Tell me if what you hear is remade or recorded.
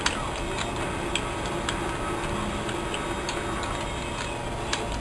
recorded